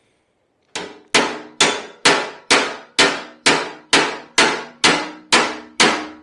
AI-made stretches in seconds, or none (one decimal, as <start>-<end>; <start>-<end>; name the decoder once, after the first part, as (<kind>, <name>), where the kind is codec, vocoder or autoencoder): none